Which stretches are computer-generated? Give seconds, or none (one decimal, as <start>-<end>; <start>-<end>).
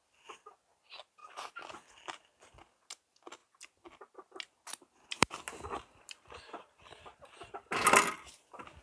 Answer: none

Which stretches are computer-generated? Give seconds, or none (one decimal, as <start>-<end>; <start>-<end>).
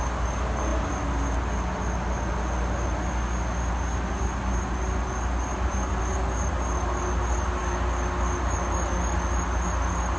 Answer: none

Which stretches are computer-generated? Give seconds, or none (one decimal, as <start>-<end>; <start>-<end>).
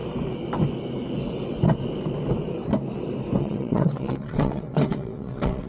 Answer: 3.4-5.7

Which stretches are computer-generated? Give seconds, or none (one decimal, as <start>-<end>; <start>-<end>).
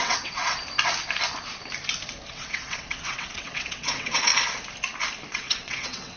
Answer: 0.0-0.4; 2.3-4.3; 5.3-6.2